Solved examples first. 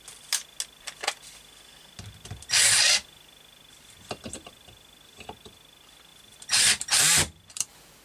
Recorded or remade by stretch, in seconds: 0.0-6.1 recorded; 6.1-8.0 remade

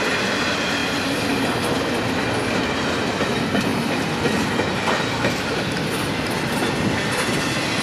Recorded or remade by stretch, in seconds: 0.0-0.8 recorded; 0.8-1.4 remade; 1.4-7.8 recorded

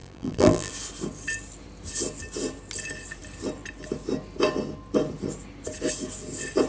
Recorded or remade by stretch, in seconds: 0.0-0.7 remade; 0.7-6.7 recorded

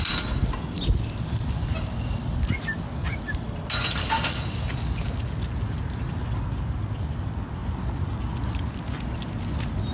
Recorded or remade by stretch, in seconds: 0.0-9.9 recorded

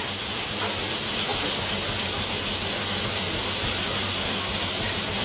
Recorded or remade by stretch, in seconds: 0.0-5.2 recorded